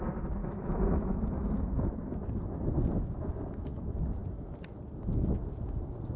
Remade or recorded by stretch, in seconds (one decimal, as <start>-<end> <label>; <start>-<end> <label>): 0.0-0.4 recorded; 0.4-1.9 remade; 1.9-6.2 recorded